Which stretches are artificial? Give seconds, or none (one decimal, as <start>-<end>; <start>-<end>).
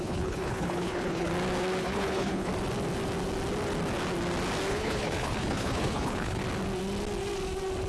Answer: 0.0-1.3; 1.8-2.5; 4.7-6.4